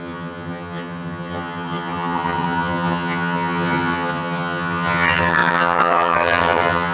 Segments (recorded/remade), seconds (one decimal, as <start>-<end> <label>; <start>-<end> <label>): 0.0-6.9 remade